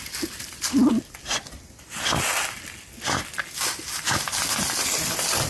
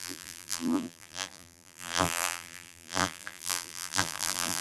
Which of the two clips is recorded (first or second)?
first